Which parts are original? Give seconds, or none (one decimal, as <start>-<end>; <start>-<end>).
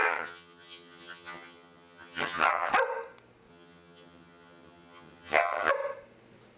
2.7-3.5; 5.7-6.6